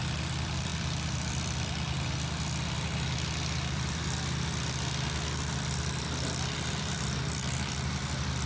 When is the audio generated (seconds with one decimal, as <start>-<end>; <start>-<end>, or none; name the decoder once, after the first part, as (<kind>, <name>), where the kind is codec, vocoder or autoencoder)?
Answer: none